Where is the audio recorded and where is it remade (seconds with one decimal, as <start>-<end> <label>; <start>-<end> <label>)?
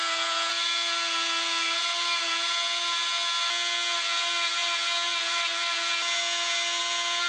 0.0-7.3 recorded